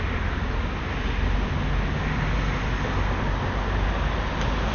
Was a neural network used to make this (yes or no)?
no